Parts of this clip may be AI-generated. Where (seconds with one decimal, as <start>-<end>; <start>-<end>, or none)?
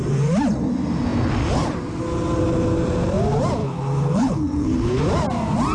3.6-5.0